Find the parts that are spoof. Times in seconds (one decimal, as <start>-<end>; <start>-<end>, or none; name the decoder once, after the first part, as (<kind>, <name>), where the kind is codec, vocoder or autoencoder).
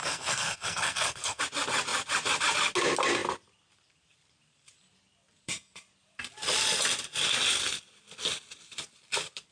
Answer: 0.0-1.4 (codec, SNAC)